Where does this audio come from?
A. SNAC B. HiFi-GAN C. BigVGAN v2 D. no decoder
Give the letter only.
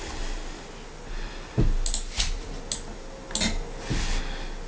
D